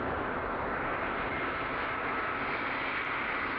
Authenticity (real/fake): real